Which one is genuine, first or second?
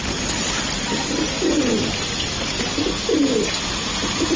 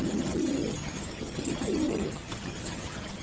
first